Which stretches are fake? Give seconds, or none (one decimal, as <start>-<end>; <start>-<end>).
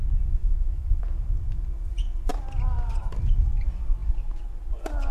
0.4-1.0